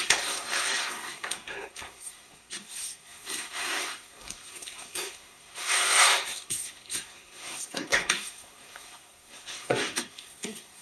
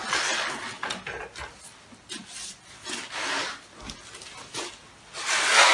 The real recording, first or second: second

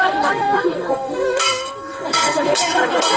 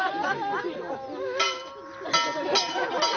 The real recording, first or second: second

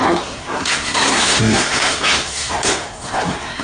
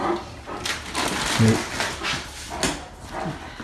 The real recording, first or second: second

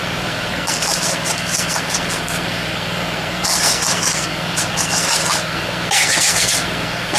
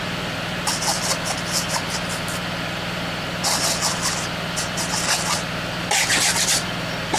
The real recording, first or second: second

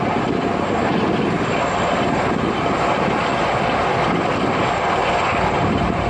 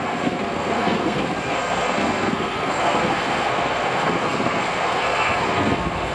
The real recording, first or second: first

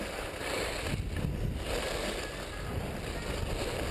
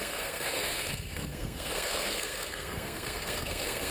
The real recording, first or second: first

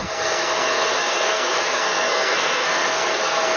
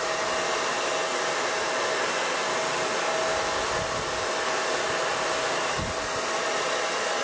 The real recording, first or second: second